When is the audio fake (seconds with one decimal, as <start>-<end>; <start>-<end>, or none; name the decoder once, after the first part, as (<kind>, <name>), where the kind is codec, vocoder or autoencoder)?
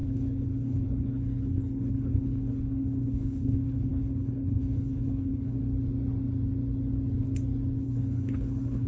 0.0-5.6 (codec, HILCodec); 7.8-8.9